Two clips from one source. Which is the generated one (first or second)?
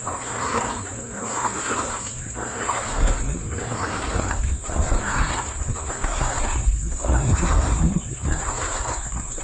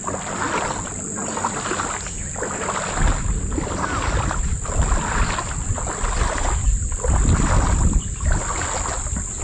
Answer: first